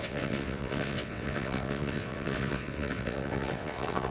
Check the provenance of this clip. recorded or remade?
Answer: remade